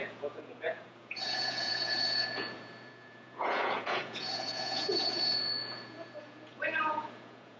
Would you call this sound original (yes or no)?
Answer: no